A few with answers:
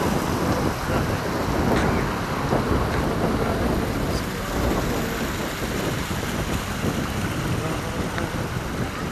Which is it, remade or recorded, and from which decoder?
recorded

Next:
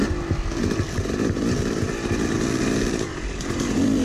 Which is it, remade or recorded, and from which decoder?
recorded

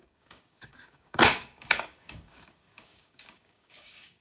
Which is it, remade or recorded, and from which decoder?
remade, codec, DAC